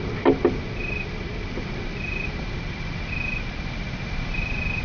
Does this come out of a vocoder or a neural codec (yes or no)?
no